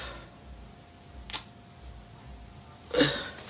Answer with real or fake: real